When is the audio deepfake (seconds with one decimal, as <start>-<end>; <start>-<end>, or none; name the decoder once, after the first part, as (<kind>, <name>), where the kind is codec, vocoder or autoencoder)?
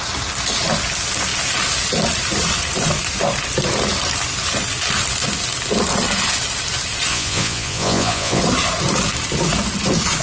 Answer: 7.1-8.4 (vocoder, Vocos)